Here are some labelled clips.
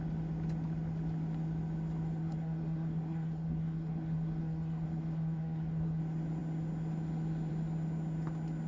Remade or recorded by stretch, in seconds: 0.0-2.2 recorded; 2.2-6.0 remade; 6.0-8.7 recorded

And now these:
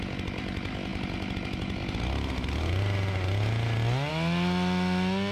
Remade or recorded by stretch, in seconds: 0.0-5.3 recorded

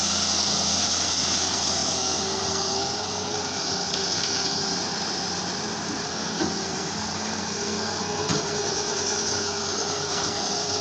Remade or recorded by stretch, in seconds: 0.0-4.6 remade; 4.6-6.1 recorded; 6.1-10.8 remade

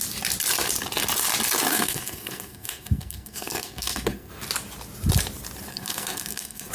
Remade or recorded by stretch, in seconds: 0.0-1.7 recorded; 1.7-4.3 remade; 4.3-5.7 recorded; 5.7-6.7 remade

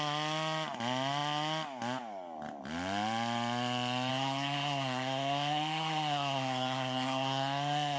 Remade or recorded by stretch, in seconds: 0.0-4.1 recorded; 4.1-8.0 remade

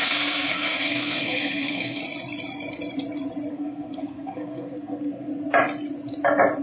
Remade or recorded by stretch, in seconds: 0.0-2.0 remade; 2.0-3.5 recorded; 3.5-5.3 remade; 5.3-6.6 recorded

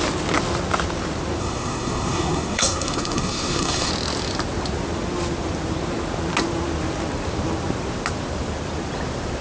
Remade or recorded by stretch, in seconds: 0.0-1.4 recorded; 1.4-3.9 remade; 3.9-9.4 recorded

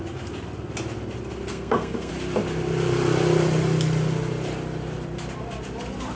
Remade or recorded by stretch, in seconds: 0.0-1.5 recorded; 1.5-2.1 remade; 2.1-6.2 recorded